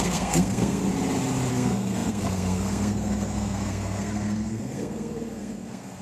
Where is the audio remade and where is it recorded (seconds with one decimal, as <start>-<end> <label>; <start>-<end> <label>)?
0.0-0.8 remade; 0.8-1.5 recorded; 1.5-6.0 remade